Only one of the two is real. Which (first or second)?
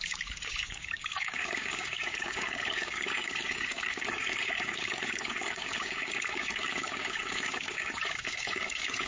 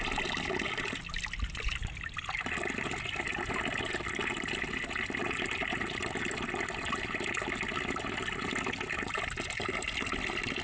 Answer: second